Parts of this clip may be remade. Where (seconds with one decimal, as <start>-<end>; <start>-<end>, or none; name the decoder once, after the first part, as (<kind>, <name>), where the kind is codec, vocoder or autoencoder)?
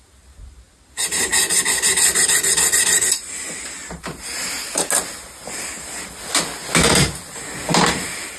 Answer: none